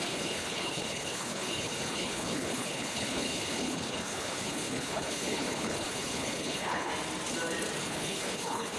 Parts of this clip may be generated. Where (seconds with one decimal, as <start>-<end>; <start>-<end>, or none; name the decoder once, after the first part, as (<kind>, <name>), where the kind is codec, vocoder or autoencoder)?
0.0-6.9 (codec, HILCodec); 7.8-8.8